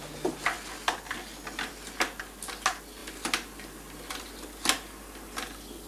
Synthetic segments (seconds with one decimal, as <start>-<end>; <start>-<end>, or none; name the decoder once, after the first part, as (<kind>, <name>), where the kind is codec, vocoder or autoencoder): none